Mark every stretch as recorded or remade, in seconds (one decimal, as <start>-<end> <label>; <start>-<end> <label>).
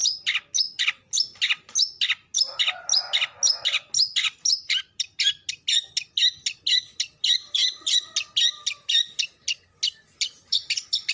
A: 0.0-11.1 recorded